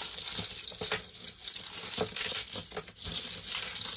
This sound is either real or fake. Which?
real